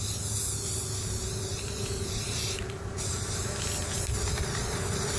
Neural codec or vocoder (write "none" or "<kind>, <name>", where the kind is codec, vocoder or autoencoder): none